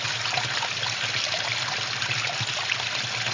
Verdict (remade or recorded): recorded